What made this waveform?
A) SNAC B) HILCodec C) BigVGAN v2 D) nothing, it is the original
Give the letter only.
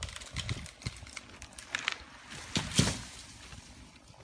D